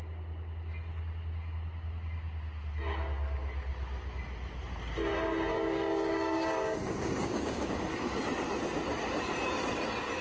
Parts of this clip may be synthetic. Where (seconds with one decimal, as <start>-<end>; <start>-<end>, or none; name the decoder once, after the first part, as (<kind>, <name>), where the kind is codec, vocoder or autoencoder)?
5.5-7.7 (codec, DAC)